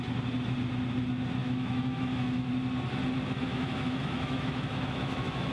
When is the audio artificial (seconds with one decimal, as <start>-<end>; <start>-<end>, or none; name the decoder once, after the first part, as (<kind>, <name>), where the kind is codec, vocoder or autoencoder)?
1.4-2.5 (autoencoder, DAC-VAE); 3.5-5.5